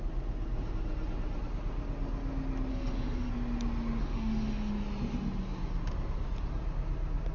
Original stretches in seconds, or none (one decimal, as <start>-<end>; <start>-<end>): 0.0-2.7; 3.3-4.0; 4.7-7.3